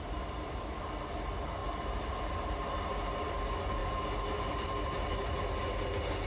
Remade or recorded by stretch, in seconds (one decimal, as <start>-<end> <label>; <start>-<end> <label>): 0.0-6.3 recorded